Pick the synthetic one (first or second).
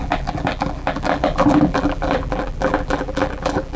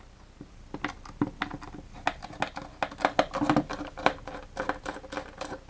first